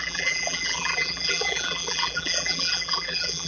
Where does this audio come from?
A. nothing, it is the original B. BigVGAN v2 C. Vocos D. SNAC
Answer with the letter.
B